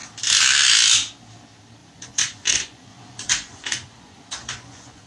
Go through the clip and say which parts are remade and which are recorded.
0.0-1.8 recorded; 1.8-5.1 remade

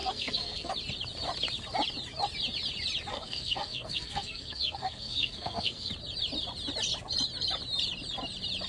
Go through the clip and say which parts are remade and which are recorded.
0.0-0.7 remade; 0.7-3.1 recorded; 3.1-5.9 remade; 5.9-8.7 recorded

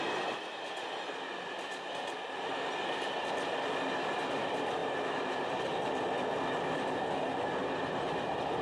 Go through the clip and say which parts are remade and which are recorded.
0.0-4.8 recorded; 4.8-5.5 remade; 5.5-8.6 recorded

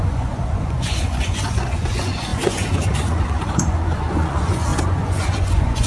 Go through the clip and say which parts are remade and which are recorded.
0.0-5.9 remade

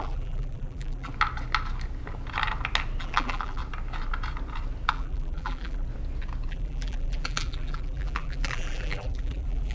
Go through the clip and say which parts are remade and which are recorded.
0.0-1.1 remade; 1.1-3.0 recorded; 3.0-3.6 remade; 3.6-4.9 recorded; 4.9-5.9 remade; 5.9-6.5 recorded; 6.5-9.7 remade

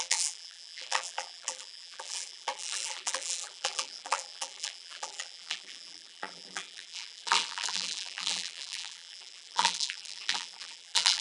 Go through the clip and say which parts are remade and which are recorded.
0.0-11.2 remade

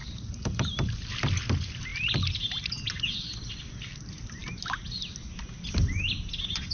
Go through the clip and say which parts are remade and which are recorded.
0.0-1.1 remade; 1.1-6.7 recorded

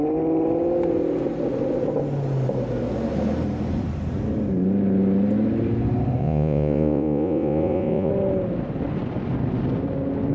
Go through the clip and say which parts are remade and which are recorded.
0.0-6.2 recorded; 6.2-8.1 remade; 8.1-10.3 recorded